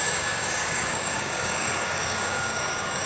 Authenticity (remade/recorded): remade